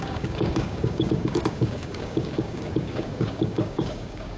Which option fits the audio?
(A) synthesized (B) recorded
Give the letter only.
A